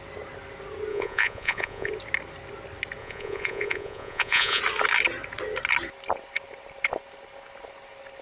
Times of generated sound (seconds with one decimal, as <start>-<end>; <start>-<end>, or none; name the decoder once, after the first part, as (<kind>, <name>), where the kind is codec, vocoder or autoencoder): 0.9-1.9 (vocoder, Vocos); 3.0-4.6